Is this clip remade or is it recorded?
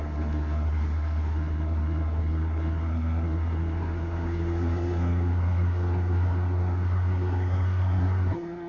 remade